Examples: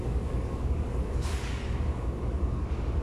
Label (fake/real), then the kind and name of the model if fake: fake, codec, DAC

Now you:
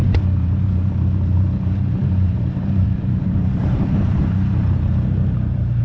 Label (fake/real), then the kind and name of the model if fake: fake, vocoder, BigVGAN v2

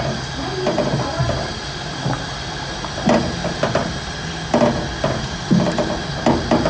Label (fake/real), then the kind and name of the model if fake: real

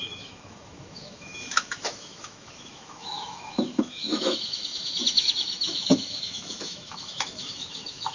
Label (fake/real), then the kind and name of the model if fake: fake, autoencoder, DAC-VAE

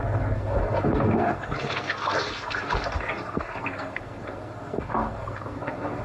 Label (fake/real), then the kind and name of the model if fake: fake, codec, SNAC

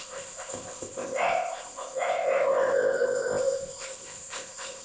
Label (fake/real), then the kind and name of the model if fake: fake, codec, ZipCodec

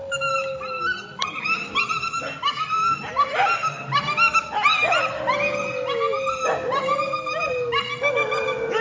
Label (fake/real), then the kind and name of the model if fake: real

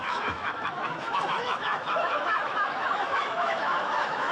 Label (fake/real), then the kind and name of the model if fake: fake, autoencoder, DAC-VAE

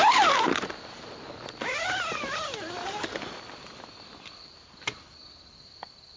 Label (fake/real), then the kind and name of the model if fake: real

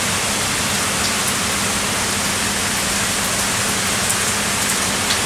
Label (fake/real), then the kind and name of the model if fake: real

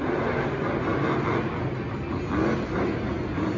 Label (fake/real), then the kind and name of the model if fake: real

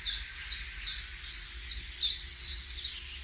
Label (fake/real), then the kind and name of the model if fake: real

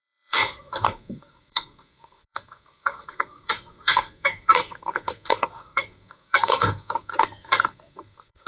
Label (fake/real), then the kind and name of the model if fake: fake, codec, SNAC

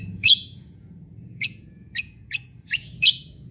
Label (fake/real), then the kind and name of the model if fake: fake, vocoder, Vocos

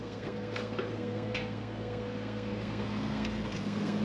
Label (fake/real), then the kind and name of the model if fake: fake, codec, SNAC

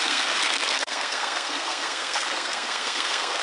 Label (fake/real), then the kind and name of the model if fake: fake, codec, SNAC